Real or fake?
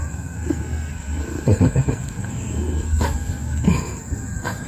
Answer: fake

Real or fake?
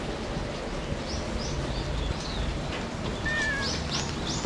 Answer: real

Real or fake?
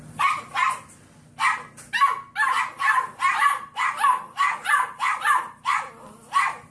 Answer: real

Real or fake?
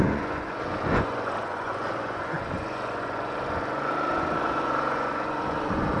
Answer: fake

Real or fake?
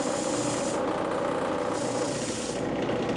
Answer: real